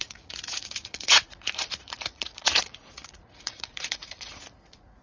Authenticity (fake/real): fake